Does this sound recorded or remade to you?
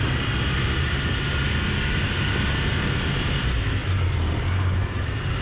recorded